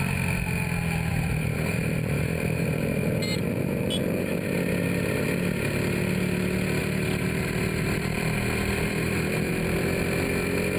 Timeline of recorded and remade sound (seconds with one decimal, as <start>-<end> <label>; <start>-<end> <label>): 0.0-1.1 recorded; 1.1-4.3 remade; 4.3-6.8 recorded; 6.8-9.5 remade; 9.5-10.8 recorded